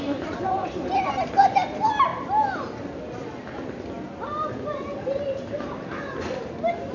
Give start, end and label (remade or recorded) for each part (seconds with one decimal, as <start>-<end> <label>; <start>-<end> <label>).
0.0-6.9 recorded

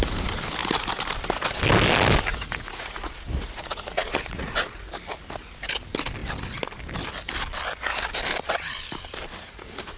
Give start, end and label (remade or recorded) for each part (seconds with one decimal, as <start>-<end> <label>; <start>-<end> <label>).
0.0-2.3 recorded; 2.3-4.9 remade; 4.9-10.0 recorded

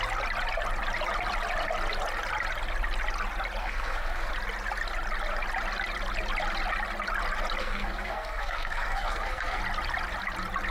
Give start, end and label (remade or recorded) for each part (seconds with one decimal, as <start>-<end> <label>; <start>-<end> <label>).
0.0-3.6 recorded; 3.6-4.3 remade; 4.3-7.6 recorded; 7.6-9.6 remade; 9.6-10.7 recorded

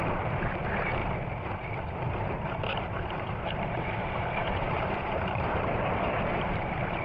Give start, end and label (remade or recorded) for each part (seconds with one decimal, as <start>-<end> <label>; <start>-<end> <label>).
0.0-1.0 remade; 1.0-2.0 recorded; 2.0-7.0 remade